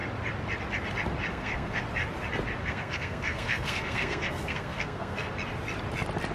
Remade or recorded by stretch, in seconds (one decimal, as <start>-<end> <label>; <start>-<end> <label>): 0.0-1.3 recorded; 1.3-1.8 remade; 1.8-2.6 recorded; 2.6-5.3 remade; 5.3-6.3 recorded